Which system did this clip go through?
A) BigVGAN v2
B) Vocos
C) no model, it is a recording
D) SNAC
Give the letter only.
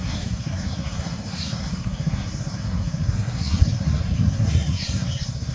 D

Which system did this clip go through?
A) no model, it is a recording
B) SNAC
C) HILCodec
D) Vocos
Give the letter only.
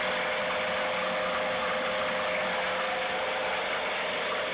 A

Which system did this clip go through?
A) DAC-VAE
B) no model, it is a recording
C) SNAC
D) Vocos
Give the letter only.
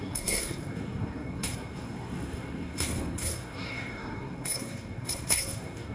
C